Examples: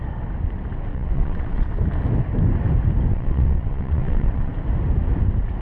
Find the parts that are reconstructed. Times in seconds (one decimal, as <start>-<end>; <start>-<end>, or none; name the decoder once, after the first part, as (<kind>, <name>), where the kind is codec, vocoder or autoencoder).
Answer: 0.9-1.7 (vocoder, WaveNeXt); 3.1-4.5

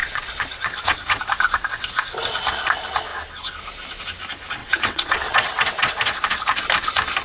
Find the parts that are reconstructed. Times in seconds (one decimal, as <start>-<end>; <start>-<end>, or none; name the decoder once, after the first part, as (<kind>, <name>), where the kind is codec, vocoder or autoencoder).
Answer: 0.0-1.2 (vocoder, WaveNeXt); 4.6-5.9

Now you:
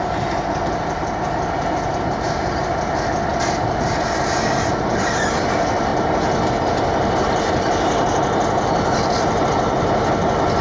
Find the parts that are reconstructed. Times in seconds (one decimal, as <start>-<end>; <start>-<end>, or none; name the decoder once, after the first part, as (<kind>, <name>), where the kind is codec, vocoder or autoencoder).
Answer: none

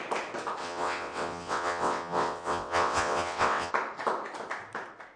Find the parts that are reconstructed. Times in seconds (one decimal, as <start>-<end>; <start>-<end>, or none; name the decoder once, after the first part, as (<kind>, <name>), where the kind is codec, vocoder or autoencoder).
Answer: 0.6-3.7 (vocoder, WaveNeXt)

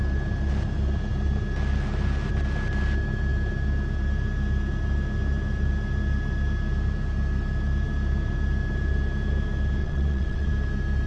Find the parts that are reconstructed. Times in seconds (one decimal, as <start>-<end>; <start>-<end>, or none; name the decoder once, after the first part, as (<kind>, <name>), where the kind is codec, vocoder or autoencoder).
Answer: 9.8-10.5 (vocoder, WaveNeXt)

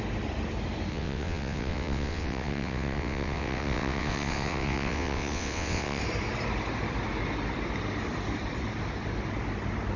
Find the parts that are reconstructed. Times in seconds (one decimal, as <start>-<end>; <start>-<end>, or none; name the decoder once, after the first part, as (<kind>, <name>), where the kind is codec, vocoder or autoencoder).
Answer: 0.9-6.0 (vocoder, WaveNeXt)

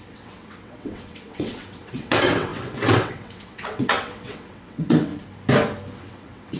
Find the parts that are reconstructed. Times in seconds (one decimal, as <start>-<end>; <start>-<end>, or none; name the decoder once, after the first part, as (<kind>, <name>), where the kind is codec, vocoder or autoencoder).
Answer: 0.0-5.1 (vocoder, WaveNeXt); 6.0-6.6